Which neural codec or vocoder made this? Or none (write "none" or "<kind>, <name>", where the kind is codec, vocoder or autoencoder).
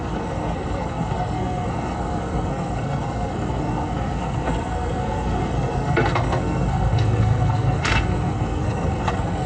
codec, SNAC